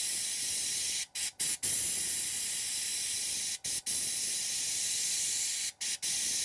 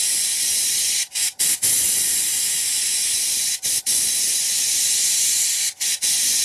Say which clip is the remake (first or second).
second